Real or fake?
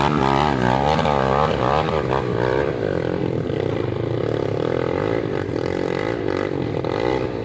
real